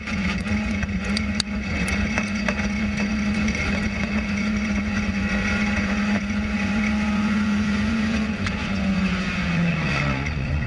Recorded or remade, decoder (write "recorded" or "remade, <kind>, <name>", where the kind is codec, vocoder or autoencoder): remade, vocoder, Vocos